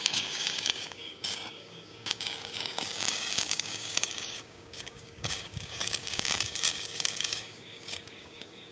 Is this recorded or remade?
remade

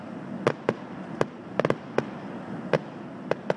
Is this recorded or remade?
recorded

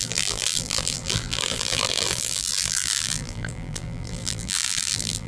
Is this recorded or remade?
remade